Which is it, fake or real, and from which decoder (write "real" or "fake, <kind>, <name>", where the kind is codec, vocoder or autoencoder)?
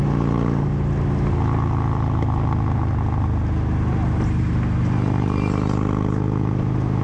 real